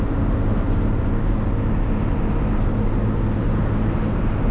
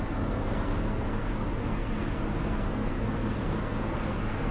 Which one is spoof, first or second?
second